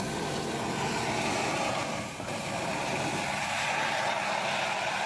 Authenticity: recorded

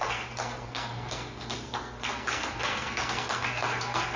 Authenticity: remade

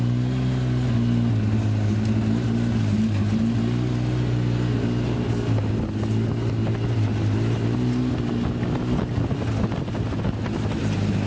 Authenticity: recorded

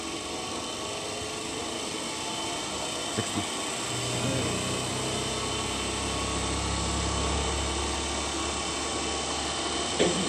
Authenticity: recorded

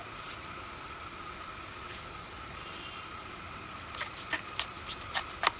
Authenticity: recorded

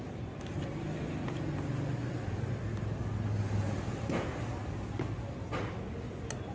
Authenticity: recorded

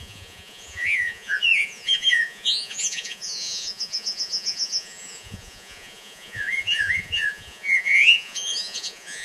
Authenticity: remade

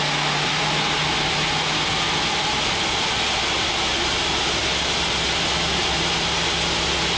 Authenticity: recorded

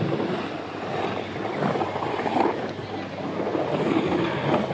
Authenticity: recorded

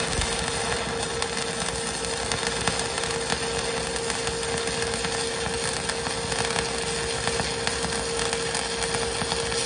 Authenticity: recorded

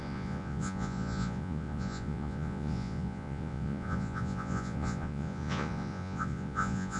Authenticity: remade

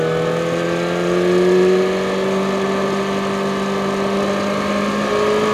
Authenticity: recorded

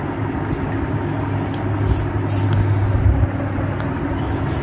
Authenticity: recorded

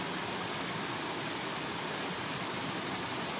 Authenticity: recorded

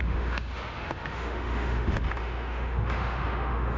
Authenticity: remade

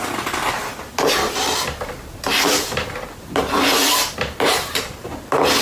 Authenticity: recorded